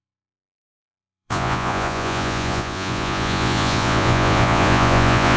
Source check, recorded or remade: remade